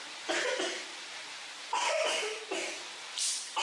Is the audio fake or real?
real